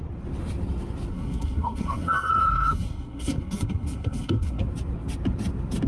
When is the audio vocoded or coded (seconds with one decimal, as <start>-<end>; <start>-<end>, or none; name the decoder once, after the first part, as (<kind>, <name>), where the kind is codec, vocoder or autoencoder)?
1.1-4.6 (codec, SNAC)